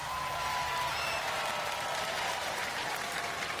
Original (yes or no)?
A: yes